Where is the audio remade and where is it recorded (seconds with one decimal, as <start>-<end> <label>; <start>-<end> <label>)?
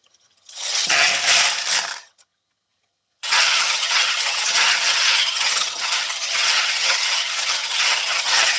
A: 0.0-1.1 remade; 1.1-2.0 recorded; 2.0-8.6 remade